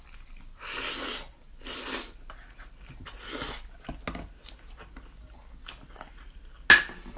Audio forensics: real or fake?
real